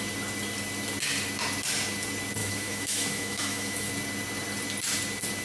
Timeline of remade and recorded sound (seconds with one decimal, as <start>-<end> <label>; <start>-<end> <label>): 0.0-2.4 recorded; 2.4-3.9 remade; 3.9-5.4 recorded